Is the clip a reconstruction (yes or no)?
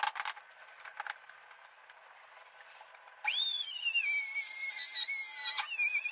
no